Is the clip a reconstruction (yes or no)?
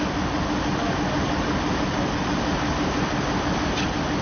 no